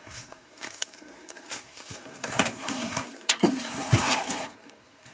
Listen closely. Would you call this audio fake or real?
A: fake